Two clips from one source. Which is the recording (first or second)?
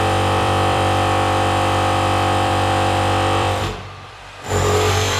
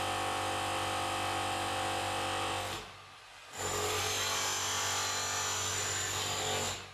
second